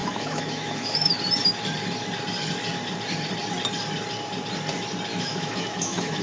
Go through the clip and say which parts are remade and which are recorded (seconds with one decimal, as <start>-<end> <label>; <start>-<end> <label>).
0.0-1.2 remade; 1.2-5.1 recorded; 5.1-6.2 remade